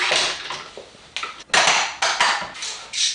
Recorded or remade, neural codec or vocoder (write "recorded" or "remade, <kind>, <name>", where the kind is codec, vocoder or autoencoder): recorded